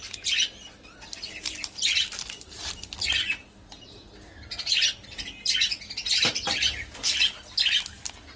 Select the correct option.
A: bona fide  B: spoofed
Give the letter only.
A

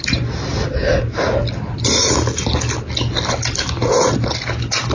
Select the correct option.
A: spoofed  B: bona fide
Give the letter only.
B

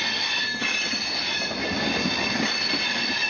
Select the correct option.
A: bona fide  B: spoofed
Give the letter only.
A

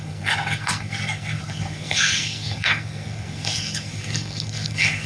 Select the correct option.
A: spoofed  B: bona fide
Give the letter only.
A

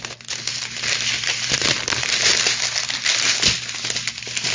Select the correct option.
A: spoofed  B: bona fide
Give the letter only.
B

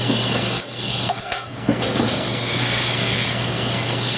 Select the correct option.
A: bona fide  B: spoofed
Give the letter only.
B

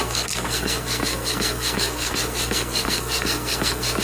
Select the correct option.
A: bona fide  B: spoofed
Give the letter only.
B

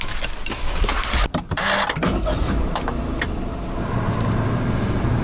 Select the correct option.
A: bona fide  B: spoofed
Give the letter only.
A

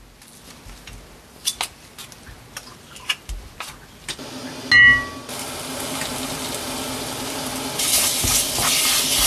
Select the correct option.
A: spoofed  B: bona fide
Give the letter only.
B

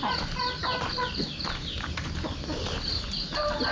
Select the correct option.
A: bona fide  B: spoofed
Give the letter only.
A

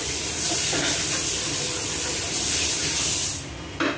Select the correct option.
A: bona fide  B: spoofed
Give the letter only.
A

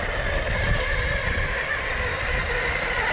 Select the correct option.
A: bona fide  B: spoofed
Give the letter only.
B